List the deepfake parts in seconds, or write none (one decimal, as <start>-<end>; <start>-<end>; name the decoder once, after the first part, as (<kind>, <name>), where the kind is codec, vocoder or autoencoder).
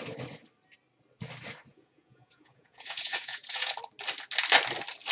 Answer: 1.7-3.7 (vocoder, Vocos)